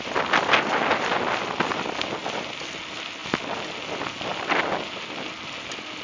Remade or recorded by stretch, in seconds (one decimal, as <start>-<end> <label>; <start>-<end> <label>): 0.0-6.0 recorded